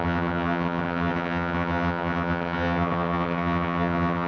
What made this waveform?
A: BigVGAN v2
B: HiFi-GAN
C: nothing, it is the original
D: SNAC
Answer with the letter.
B